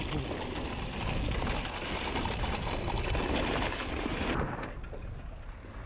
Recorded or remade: recorded